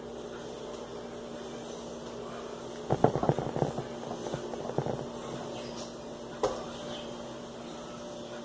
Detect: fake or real real